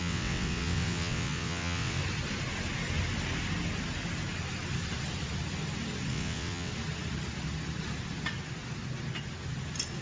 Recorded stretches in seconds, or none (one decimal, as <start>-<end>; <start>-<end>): 2.0-6.1; 6.7-10.0